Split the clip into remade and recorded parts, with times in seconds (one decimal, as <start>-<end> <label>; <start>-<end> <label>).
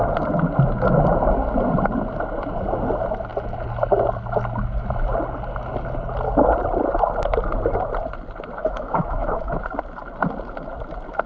0.0-8.6 recorded; 8.6-9.6 remade; 9.6-11.3 recorded